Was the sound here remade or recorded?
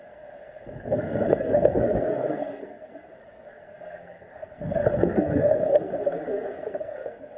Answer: remade